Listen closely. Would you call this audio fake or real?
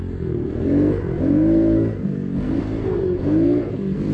fake